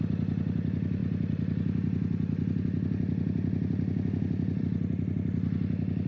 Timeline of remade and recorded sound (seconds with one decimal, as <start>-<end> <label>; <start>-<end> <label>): 0.0-6.1 recorded